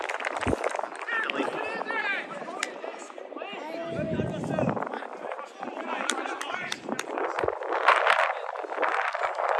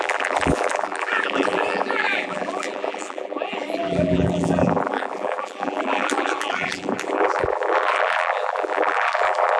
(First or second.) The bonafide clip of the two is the first